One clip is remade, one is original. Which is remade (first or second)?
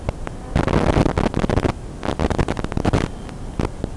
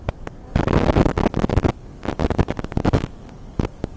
second